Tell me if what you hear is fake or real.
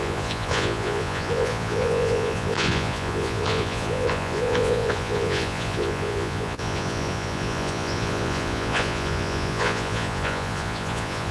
fake